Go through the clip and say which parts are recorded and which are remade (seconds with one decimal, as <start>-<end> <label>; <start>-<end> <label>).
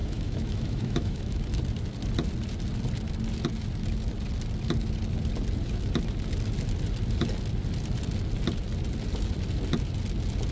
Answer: 0.0-1.4 remade; 1.4-10.5 recorded